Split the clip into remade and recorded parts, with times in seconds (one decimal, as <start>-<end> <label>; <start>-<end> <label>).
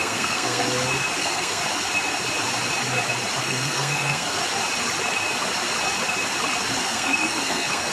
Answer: 0.0-0.6 remade; 0.6-1.2 recorded; 1.2-1.6 remade; 1.6-3.4 recorded; 3.4-4.4 remade; 4.4-6.8 recorded; 6.8-7.9 remade